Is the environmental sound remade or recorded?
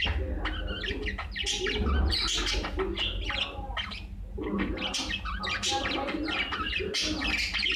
recorded